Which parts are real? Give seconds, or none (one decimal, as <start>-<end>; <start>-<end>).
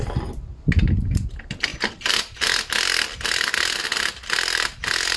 0.0-5.2